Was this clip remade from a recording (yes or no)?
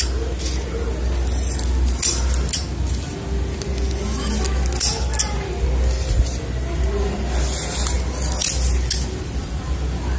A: no